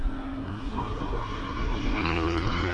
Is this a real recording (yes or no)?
no